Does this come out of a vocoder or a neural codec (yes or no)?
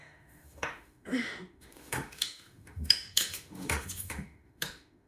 yes